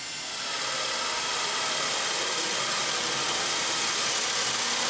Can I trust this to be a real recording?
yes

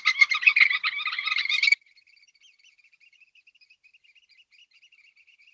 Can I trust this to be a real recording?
yes